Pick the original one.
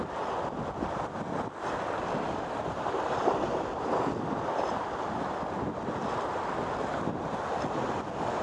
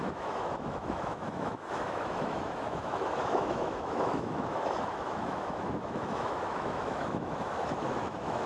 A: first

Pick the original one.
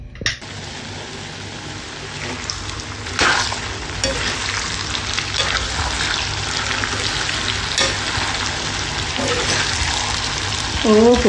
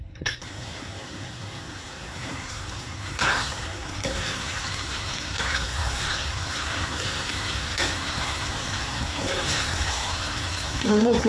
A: first